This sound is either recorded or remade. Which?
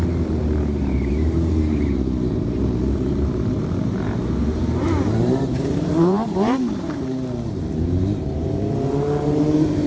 remade